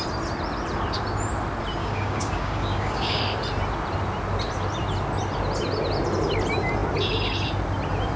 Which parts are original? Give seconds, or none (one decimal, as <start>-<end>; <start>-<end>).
0.0-1.8; 3.2-8.2